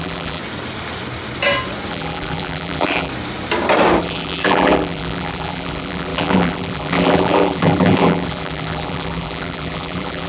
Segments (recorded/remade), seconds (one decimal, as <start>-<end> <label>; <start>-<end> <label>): 0.0-0.4 remade; 0.4-1.9 recorded; 1.9-3.1 remade; 3.1-4.0 recorded; 4.0-10.3 remade